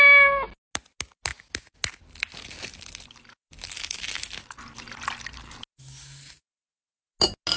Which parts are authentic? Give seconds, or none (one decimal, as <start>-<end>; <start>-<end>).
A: 0.0-7.6